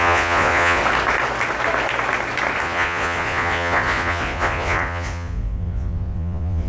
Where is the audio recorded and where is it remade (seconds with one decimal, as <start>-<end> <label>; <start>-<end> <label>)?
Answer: 0.0-0.8 remade; 0.8-2.6 recorded; 2.6-6.7 remade